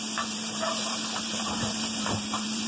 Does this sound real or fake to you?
fake